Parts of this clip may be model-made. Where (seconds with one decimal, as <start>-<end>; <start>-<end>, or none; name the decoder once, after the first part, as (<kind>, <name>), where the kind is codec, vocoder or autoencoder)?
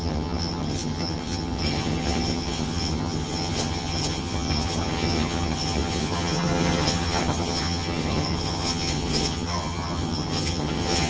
0.0-11.1 (vocoder, HiFi-GAN)